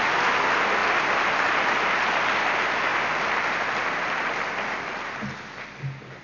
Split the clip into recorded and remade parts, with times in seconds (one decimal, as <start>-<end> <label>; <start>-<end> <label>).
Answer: 0.0-2.9 recorded; 2.9-5.3 remade; 5.3-6.2 recorded